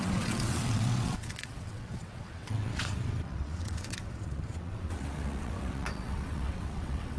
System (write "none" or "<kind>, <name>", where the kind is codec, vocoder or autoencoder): vocoder, WaveNeXt